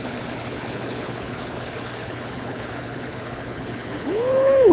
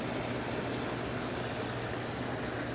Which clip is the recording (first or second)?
second